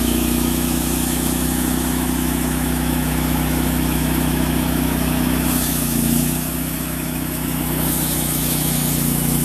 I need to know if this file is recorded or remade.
remade